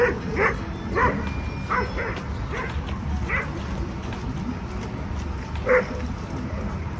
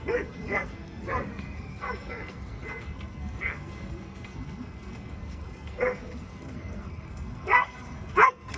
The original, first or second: first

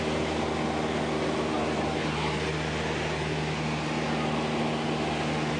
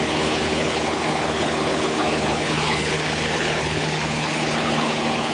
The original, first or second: first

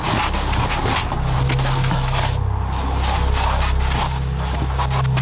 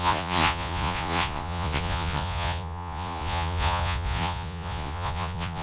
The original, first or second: first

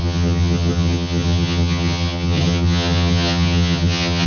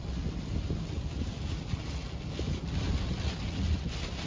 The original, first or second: second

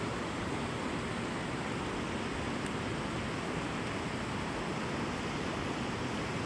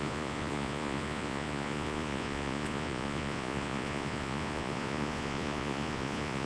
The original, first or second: first